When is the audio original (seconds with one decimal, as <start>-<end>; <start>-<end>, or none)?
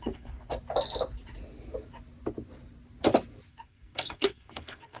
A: 0.5-3.5